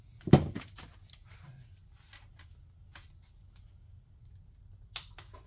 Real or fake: real